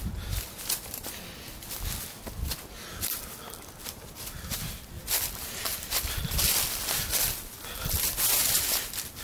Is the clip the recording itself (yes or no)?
yes